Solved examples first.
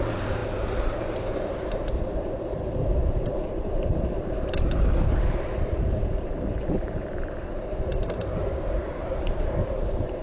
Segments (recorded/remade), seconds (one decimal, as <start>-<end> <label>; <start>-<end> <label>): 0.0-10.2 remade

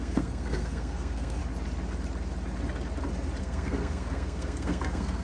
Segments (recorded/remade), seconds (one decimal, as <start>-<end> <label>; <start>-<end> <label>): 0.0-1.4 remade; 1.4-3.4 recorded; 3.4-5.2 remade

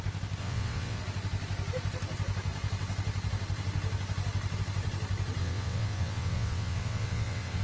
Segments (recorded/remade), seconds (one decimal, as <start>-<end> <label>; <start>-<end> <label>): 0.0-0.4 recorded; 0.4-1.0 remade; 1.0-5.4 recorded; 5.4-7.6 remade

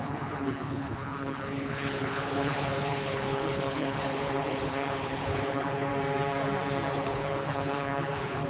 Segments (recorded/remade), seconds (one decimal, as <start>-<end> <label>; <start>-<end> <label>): 0.0-5.9 remade; 5.9-6.9 recorded; 6.9-8.5 remade

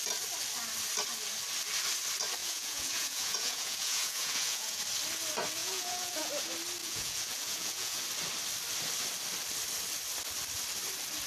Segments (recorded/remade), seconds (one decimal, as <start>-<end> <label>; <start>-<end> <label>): 0.0-2.4 recorded; 2.4-4.8 remade; 4.8-5.6 recorded; 5.6-6.3 remade; 6.3-6.8 recorded; 6.8-8.0 remade; 8.0-11.3 recorded

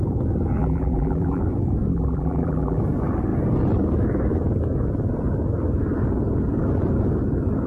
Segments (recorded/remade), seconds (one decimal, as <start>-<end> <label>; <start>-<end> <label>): 0.0-0.6 recorded; 0.6-1.4 remade; 1.4-1.9 recorded; 1.9-2.8 remade; 2.8-7.7 recorded